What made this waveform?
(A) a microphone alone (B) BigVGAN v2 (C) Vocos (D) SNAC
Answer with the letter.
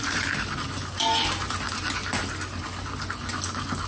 A